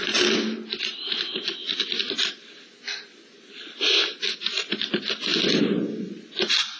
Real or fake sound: real